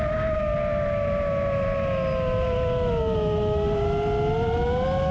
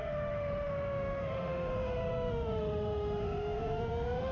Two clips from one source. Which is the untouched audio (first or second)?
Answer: first